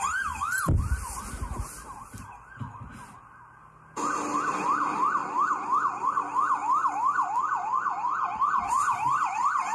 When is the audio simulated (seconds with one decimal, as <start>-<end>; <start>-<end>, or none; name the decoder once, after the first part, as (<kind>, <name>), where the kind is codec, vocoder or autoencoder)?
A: none